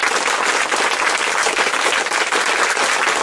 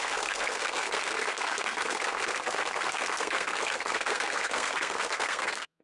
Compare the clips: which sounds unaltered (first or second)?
first